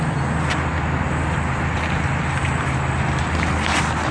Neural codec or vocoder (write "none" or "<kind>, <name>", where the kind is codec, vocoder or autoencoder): none